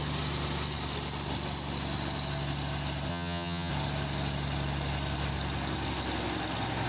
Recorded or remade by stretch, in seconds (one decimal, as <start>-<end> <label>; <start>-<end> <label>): 0.0-3.1 recorded; 3.1-3.7 remade; 3.7-6.9 recorded